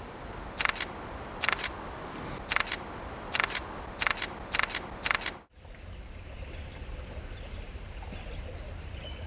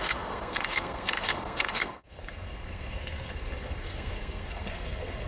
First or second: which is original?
first